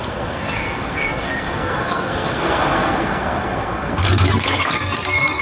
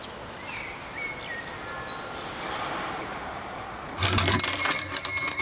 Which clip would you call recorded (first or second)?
second